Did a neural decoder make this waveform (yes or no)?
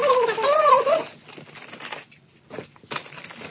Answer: no